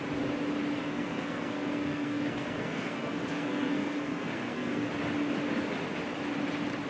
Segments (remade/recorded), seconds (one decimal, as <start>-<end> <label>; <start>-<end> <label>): 0.0-0.8 recorded; 0.8-4.9 remade; 4.9-6.9 recorded